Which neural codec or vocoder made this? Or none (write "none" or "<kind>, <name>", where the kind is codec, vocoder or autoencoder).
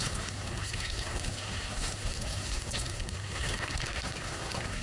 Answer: codec, SNAC